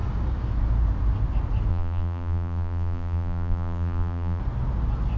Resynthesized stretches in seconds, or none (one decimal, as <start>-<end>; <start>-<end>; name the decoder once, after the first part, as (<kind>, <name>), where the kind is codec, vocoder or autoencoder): 1.7-4.4 (vocoder, BigVGAN v2)